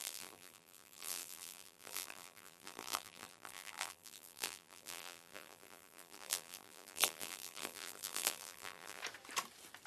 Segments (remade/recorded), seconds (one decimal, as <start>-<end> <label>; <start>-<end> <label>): 0.0-9.0 remade; 9.0-9.9 recorded